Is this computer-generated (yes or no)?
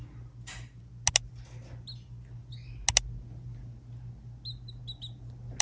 no